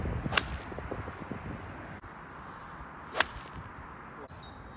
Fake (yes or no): no